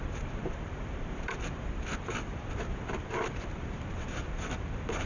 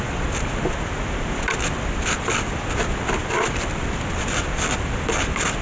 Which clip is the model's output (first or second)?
first